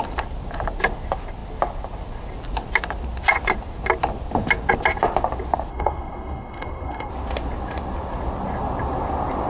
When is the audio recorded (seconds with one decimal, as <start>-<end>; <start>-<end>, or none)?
0.0-5.7; 7.1-9.5